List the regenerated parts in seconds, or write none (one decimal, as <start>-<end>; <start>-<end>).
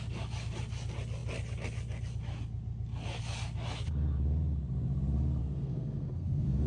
5.4-6.7